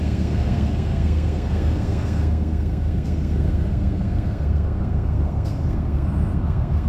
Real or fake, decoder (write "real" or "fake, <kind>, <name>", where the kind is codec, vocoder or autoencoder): fake, codec, SNAC